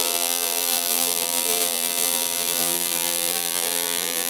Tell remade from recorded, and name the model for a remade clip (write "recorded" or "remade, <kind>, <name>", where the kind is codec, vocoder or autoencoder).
remade, vocoder, BigVGAN v2